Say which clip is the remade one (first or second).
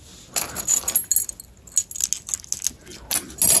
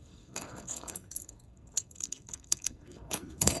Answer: second